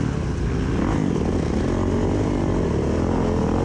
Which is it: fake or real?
real